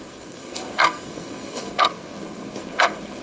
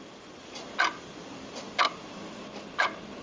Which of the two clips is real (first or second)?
second